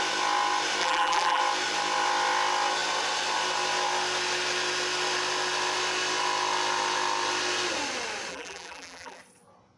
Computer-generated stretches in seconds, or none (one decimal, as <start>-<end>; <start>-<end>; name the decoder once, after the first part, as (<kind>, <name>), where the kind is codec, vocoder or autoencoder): 0.8-1.4 (vocoder, BigVGAN v2); 8.3-9.2